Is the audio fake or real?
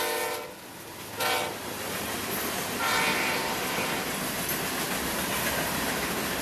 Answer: real